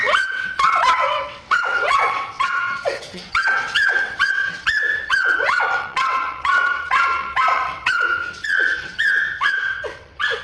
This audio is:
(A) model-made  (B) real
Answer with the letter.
A